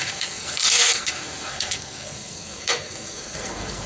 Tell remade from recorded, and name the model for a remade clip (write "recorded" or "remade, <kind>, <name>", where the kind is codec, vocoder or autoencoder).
remade, codec, SNAC